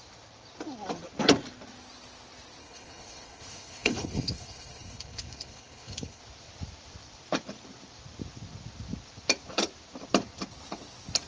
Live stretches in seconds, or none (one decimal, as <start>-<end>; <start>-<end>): 0.0-2.6; 6.2-11.3